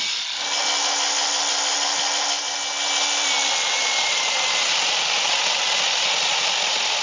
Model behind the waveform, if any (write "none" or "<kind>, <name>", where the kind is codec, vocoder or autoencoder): none